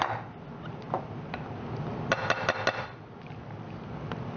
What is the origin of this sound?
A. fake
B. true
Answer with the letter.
B